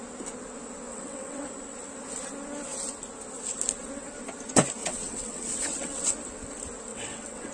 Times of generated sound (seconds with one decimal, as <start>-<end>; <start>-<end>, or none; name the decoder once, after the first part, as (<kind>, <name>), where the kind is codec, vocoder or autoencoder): 0.9-1.5 (vocoder, WaveNeXt); 4.8-6.1; 6.9-7.5